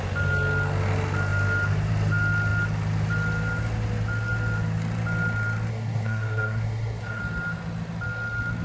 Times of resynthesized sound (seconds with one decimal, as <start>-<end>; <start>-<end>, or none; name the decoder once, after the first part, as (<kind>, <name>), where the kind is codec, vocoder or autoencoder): 5.7-7.2 (codec, SNAC)